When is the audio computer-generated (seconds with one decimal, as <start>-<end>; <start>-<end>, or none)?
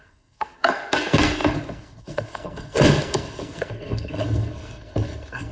0.0-5.5